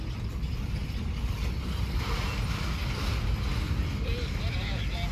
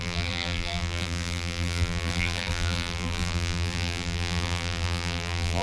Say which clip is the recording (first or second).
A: first